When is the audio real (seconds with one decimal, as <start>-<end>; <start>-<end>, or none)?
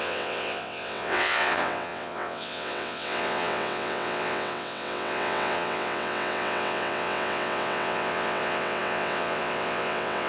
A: none